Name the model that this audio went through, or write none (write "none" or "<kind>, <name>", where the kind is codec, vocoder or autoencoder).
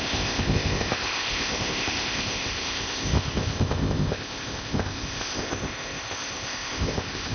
codec, ZipCodec